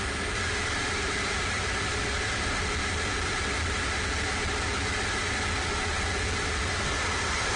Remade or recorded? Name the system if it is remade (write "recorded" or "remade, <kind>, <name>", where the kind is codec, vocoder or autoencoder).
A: recorded